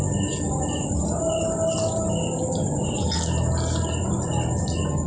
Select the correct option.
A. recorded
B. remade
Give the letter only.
A